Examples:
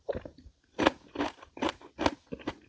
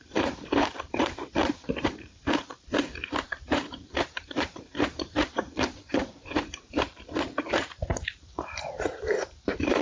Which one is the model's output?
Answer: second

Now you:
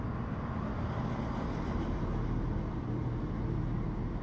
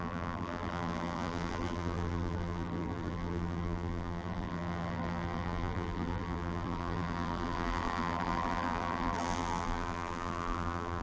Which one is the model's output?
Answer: second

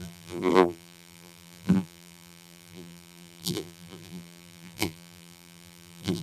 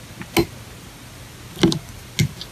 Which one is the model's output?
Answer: first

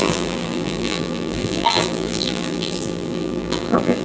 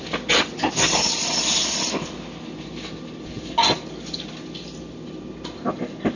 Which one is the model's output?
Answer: first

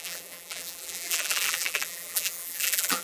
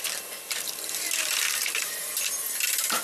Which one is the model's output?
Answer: first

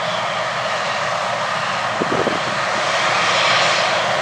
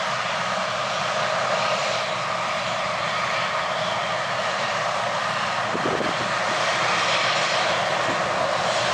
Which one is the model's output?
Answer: second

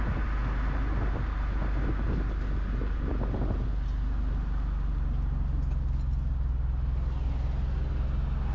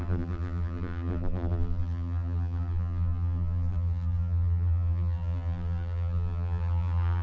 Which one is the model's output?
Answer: second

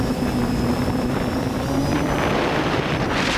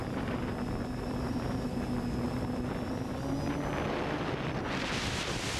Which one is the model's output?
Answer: first